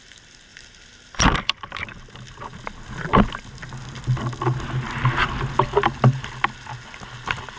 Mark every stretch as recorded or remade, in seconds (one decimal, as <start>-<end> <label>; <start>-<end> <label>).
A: 0.0-0.5 recorded; 0.5-2.1 remade; 2.1-7.6 recorded